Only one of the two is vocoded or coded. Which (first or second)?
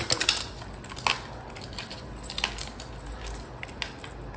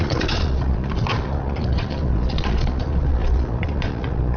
second